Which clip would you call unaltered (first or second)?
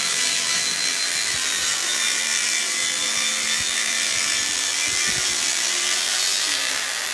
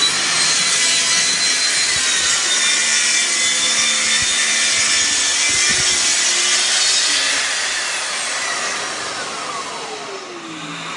second